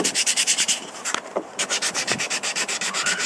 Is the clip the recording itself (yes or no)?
no